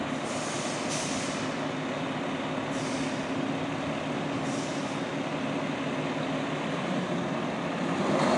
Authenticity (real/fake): real